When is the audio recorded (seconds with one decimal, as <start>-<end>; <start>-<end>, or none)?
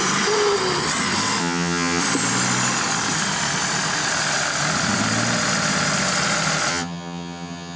0.0-1.4; 2.0-6.7